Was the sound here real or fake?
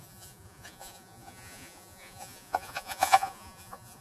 fake